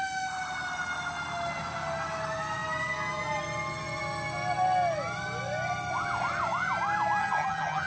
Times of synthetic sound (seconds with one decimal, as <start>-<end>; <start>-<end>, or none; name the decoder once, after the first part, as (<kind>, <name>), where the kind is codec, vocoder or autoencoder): 7.2-7.9 (vocoder, HiFi-GAN)